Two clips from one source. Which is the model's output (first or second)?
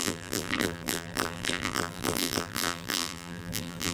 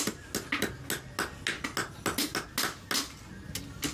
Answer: first